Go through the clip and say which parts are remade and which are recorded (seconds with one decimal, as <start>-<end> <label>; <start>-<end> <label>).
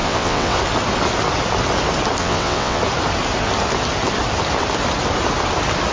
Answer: 0.0-0.6 remade; 0.6-2.2 recorded; 2.2-2.8 remade; 2.8-5.9 recorded